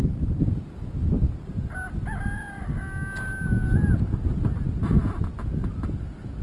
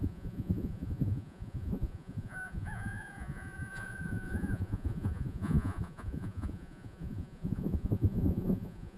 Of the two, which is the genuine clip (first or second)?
first